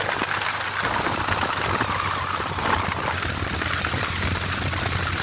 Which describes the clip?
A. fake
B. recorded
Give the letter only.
B